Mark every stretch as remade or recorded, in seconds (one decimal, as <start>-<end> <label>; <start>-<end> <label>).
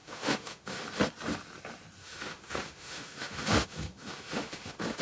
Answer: 0.0-0.8 remade; 0.8-2.0 recorded; 2.0-5.0 remade